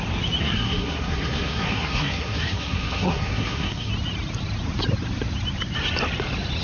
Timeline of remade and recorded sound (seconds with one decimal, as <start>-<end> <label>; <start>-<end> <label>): 0.0-0.4 recorded; 0.4-3.9 remade; 3.9-6.6 recorded